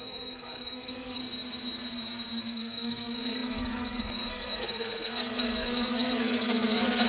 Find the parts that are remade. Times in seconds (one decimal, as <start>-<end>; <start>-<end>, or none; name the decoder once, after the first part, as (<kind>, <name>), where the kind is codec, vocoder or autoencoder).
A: 0.0-1.2 (codec, SNAC); 2.4-7.1